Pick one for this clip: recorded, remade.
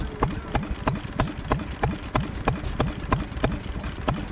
recorded